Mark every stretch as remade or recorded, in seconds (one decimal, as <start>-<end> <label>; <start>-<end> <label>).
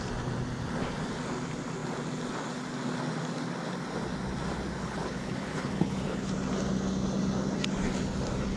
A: 0.0-4.8 recorded; 4.8-6.3 remade; 6.3-8.6 recorded